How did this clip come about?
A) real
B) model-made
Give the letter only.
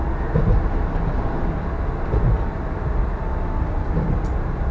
A